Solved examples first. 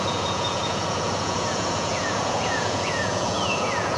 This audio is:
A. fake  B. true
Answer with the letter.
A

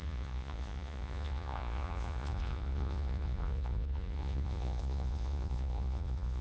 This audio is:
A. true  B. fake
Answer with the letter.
B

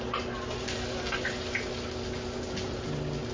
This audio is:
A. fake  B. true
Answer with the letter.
B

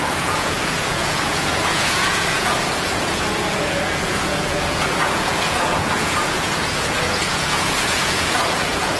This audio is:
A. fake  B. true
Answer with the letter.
A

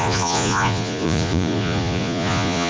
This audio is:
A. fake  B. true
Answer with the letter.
A